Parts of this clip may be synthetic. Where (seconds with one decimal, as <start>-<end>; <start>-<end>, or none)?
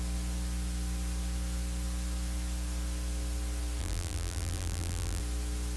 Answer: 3.8-5.2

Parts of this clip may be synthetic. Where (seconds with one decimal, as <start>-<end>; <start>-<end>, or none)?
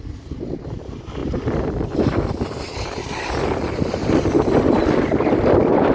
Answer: 1.2-2.7; 4.0-5.9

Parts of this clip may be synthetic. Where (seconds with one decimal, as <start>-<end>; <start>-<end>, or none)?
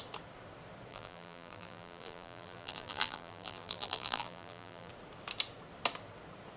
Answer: 0.9-4.9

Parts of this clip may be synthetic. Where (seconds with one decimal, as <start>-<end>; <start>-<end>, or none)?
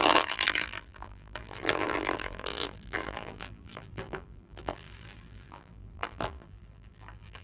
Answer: 0.0-7.4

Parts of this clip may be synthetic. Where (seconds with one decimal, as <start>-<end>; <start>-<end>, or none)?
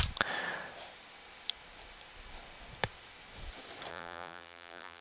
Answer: 3.9-5.0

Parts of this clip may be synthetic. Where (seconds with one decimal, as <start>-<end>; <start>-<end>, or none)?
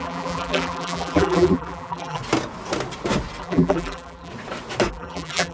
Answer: 0.0-2.2; 3.4-4.3; 4.9-5.5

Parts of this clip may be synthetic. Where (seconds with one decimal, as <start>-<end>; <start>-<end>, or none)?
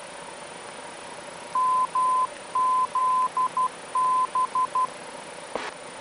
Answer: none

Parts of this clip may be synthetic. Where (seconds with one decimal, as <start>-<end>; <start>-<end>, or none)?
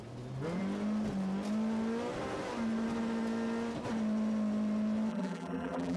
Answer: 5.1-6.0